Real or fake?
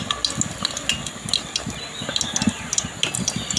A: real